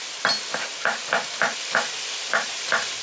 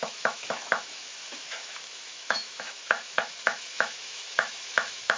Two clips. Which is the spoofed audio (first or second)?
second